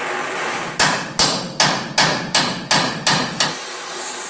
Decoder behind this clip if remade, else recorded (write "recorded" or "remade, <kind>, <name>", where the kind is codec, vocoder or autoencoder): recorded